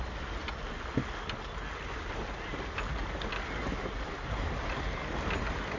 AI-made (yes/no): no